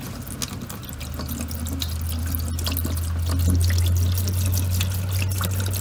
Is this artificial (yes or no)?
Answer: no